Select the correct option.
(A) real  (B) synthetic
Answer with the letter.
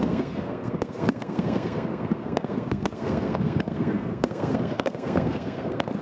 B